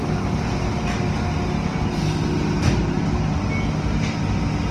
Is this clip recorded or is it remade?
recorded